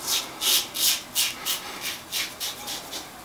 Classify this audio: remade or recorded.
recorded